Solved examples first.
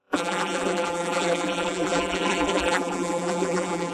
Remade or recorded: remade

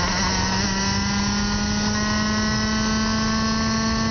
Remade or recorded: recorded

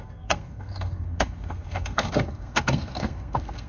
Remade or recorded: remade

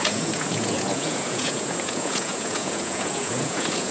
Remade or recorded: remade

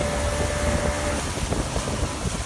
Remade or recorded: recorded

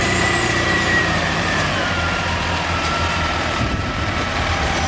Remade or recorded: remade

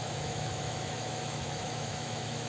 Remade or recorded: remade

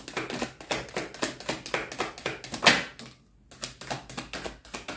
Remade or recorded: recorded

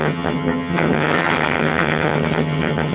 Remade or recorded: remade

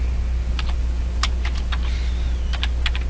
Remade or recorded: recorded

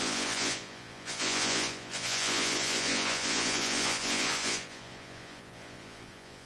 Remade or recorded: remade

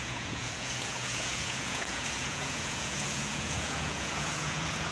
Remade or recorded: remade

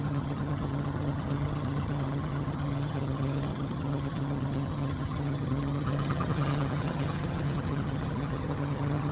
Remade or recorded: remade